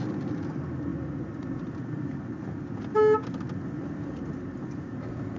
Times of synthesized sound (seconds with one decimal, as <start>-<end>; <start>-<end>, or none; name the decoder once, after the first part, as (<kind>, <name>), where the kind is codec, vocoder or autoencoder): none